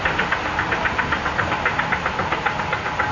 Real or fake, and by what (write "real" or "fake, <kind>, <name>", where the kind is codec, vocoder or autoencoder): real